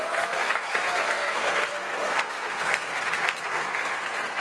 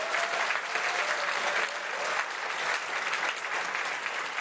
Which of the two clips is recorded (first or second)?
second